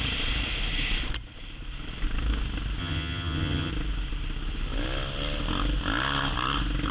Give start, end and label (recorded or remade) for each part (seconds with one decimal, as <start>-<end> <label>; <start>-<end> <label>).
0.0-2.8 recorded; 2.8-3.7 remade; 3.7-6.9 recorded